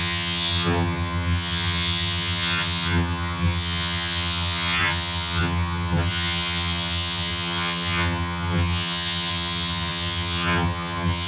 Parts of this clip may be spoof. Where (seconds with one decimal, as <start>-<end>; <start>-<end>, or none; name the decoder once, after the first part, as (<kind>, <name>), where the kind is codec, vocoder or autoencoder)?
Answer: 0.0-11.3 (vocoder, HiFi-GAN)